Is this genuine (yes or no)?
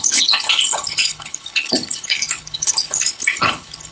no